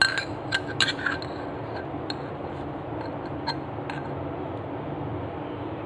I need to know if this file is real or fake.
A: real